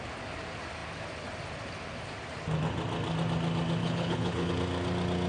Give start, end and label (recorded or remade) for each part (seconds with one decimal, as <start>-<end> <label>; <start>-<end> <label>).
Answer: 0.0-3.8 recorded; 3.8-4.5 remade; 4.5-5.3 recorded